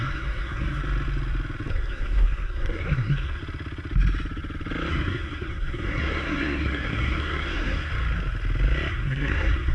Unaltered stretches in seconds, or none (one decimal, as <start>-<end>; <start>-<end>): 0.8-1.7; 3.4-4.9; 7.9-8.9